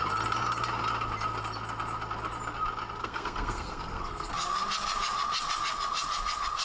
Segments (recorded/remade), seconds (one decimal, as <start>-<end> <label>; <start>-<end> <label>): 0.0-3.0 recorded; 3.0-4.3 remade; 4.3-6.6 recorded